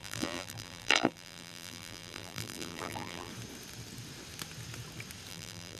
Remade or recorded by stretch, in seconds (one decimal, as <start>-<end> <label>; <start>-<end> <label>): 0.0-3.3 remade; 3.3-5.3 recorded; 5.3-5.8 remade